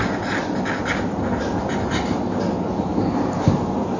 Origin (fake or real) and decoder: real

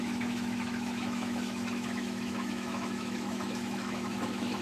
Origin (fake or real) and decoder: fake, autoencoder, DAC-VAE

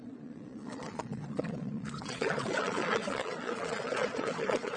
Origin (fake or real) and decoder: fake, vocoder, Vocos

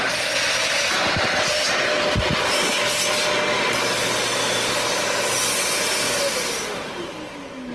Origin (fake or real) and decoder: real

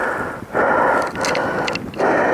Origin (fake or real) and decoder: real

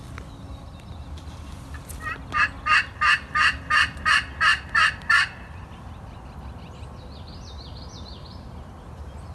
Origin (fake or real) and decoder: real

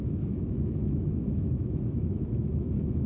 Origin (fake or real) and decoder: fake, autoencoder, DAC-VAE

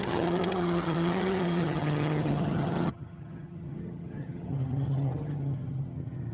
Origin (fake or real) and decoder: fake, vocoder, HiFi-GAN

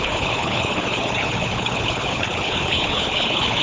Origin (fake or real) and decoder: fake, codec, HILCodec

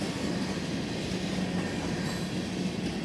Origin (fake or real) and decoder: real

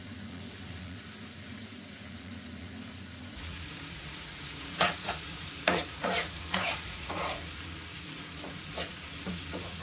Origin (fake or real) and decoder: fake, vocoder, Vocos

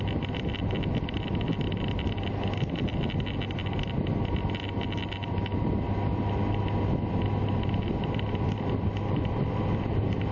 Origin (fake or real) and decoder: real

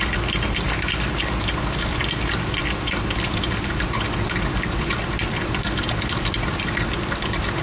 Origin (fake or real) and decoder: real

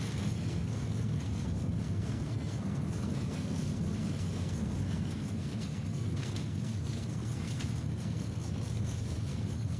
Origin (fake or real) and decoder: fake, codec, SNAC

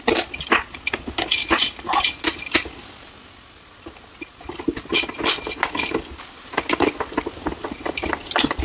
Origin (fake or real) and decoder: real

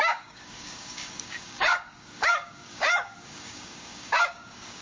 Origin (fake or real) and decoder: fake, codec, DAC